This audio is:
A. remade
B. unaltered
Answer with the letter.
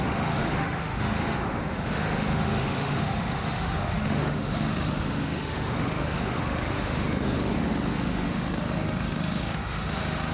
A